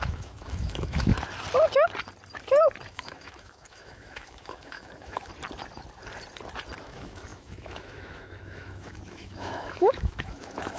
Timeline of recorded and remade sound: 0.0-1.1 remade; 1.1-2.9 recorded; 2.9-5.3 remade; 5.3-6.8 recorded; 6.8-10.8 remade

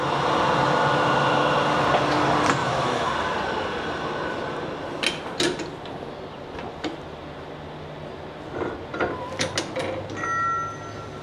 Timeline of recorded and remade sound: 0.0-2.6 recorded; 2.6-3.1 remade; 3.1-11.2 recorded

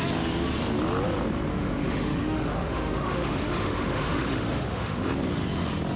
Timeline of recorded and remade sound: 0.0-1.5 recorded; 1.5-5.1 remade; 5.1-6.0 recorded

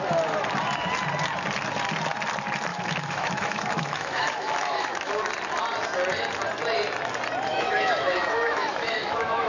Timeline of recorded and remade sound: 0.0-2.7 recorded; 2.7-5.1 remade; 5.1-7.5 recorded; 7.5-9.5 remade

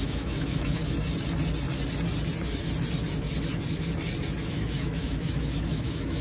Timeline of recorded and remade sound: 0.0-0.8 remade; 0.8-4.5 recorded; 4.5-6.2 remade

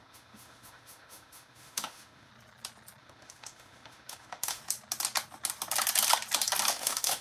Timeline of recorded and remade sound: 0.0-2.3 remade; 2.3-3.0 recorded; 3.0-4.6 remade; 4.6-6.7 recorded; 6.7-7.2 remade

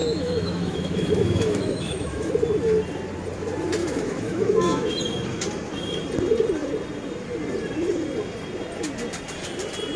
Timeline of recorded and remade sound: 0.0-2.3 remade; 2.3-3.8 recorded; 3.8-5.0 remade; 5.0-10.0 recorded